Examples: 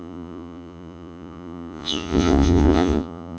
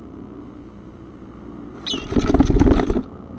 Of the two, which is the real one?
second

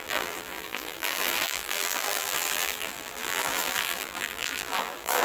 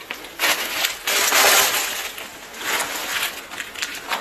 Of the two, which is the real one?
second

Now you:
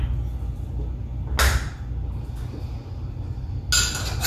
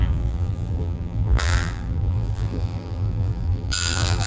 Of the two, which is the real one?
first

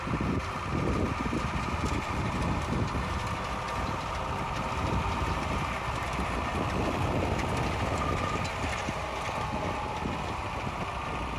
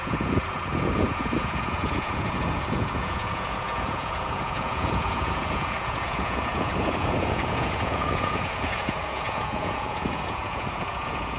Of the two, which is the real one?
first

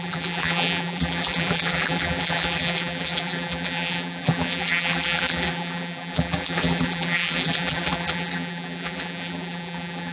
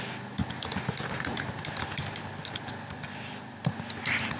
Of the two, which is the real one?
second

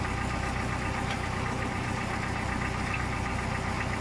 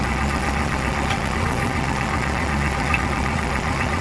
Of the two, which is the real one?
first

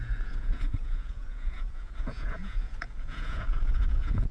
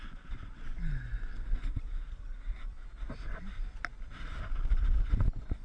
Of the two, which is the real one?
second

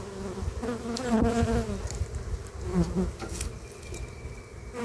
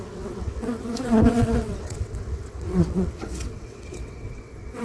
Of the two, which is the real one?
first